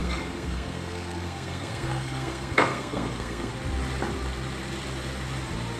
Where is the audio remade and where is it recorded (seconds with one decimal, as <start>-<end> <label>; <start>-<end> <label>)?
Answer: 0.0-3.5 remade; 3.5-5.8 recorded